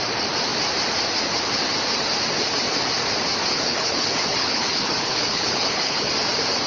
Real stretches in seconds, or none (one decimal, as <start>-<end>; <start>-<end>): 0.0-3.5; 6.1-6.7